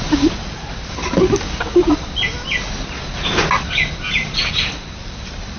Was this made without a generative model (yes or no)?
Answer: yes